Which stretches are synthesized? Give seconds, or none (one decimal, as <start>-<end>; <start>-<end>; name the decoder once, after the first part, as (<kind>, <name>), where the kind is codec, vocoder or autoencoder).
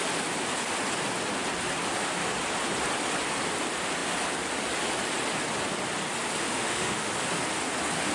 6.4-7.1 (autoencoder, DAC-VAE)